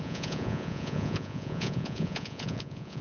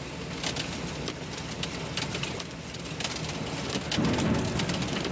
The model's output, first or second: first